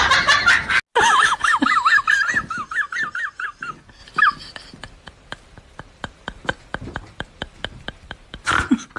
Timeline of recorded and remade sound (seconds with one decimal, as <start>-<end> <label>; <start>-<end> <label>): 0.0-4.0 recorded; 4.0-8.5 remade; 8.5-9.0 recorded

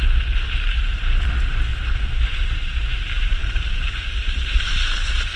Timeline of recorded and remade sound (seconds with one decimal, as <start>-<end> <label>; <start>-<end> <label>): 0.0-1.7 recorded; 1.7-2.7 remade; 2.7-3.4 recorded; 3.4-4.7 remade; 4.7-5.4 recorded

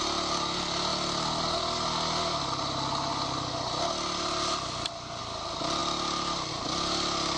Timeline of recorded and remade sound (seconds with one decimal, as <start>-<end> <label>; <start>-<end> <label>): 0.0-7.4 recorded

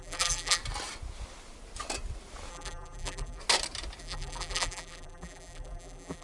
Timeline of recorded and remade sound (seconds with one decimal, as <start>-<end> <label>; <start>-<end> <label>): 0.0-0.6 remade; 0.6-2.5 recorded; 2.5-3.4 remade; 3.4-4.0 recorded; 4.0-6.2 remade